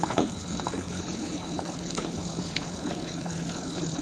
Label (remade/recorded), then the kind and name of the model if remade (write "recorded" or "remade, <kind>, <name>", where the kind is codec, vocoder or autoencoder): remade, codec, HILCodec